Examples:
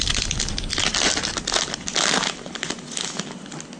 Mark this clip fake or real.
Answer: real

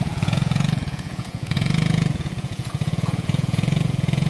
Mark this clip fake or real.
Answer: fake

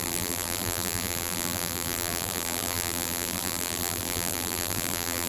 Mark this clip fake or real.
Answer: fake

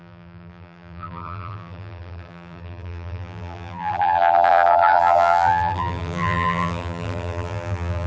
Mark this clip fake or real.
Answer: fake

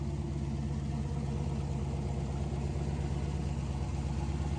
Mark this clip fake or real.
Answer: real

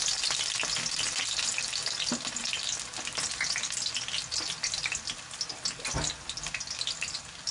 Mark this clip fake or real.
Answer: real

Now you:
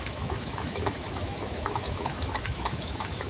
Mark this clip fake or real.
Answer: fake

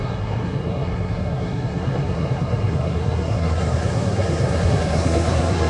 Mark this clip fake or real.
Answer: fake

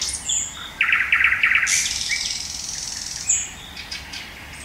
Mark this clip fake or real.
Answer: real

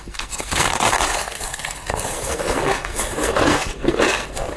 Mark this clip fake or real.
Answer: fake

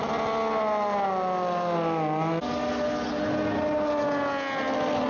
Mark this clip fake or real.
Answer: real